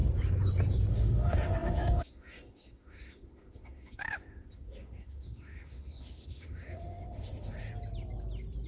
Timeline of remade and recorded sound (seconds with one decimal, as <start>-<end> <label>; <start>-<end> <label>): 0.0-0.9 recorded; 0.9-7.7 remade; 7.7-8.7 recorded